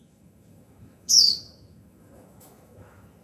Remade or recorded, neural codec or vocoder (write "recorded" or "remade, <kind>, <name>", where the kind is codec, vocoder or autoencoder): remade, autoencoder, DAC-VAE